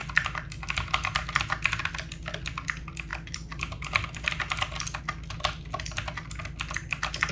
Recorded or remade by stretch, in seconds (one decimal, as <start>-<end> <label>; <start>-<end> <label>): 0.0-7.3 recorded